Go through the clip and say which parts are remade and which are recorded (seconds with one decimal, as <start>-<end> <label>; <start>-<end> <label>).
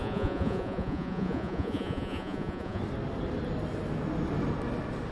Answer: 0.0-2.8 remade; 2.8-5.1 recorded